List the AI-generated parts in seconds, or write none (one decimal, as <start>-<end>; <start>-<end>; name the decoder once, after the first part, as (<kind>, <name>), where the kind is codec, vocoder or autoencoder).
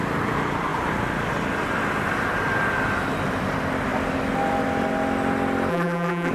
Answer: 5.7-6.3 (vocoder, BigVGAN v2)